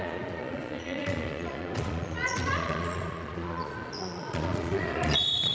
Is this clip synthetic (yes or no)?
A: yes